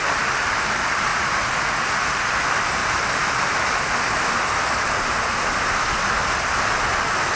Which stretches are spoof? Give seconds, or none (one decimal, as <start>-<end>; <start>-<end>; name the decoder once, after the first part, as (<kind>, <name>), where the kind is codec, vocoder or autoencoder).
1.1-2.2 (vocoder, Vocos)